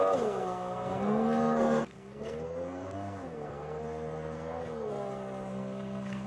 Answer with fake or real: fake